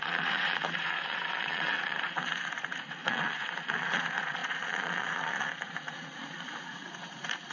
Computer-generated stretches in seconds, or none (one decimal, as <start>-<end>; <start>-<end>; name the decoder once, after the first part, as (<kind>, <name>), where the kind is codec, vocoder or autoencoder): 0.0-7.5 (vocoder, Vocos)